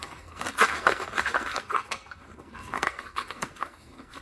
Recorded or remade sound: remade